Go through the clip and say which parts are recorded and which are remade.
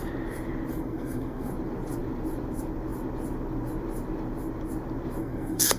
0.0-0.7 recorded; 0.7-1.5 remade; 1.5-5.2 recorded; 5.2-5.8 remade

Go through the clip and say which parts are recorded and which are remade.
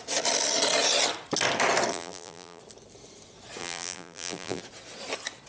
0.0-1.9 recorded; 1.9-2.6 remade; 2.6-3.6 recorded; 3.6-4.6 remade; 4.6-5.5 recorded